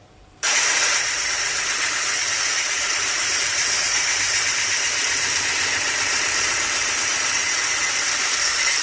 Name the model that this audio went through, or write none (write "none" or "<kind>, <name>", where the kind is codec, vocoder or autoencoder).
vocoder, BigVGAN v2